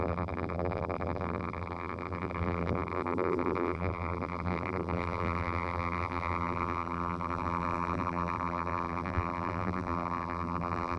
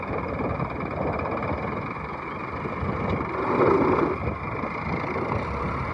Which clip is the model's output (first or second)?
first